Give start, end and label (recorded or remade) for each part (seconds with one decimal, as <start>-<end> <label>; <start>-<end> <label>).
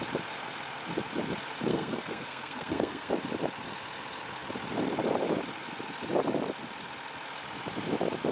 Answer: 0.0-1.7 recorded; 1.7-3.1 remade; 3.1-8.3 recorded